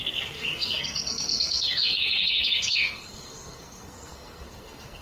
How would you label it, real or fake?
fake